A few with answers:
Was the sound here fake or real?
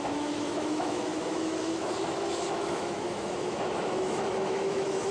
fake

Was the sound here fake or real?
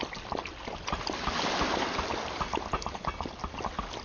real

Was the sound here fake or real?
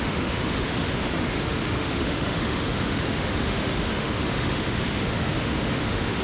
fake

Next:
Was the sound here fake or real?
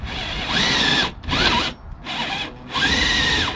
real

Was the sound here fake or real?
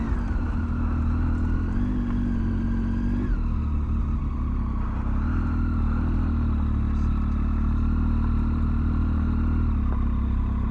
real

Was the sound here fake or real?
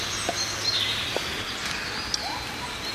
real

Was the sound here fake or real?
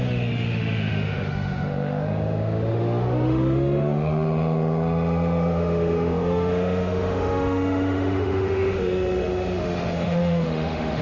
fake